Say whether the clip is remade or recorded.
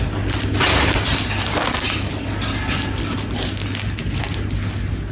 recorded